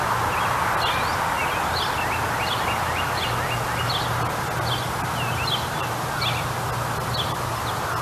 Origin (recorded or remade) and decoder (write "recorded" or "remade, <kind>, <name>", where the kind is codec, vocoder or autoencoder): recorded